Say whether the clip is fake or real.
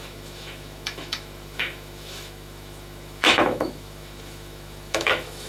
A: fake